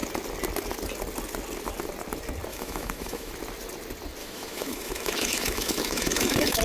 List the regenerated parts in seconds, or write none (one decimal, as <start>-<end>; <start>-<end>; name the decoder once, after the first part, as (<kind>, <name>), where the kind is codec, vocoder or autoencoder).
2.5-3.3 (autoencoder, DAC-VAE); 4.2-6.6